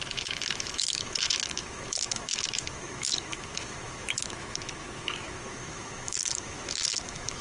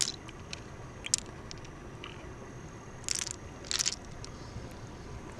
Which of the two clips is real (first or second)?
second